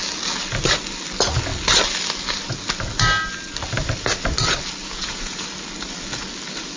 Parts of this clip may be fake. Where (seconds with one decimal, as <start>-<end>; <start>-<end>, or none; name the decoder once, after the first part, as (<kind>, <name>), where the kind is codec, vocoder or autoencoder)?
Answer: 4.8-5.4 (vocoder, Vocos)